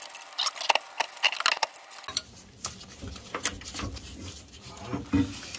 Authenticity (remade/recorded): recorded